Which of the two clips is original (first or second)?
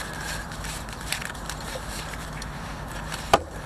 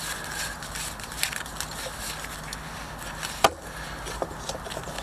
second